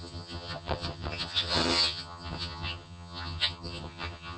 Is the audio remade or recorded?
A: remade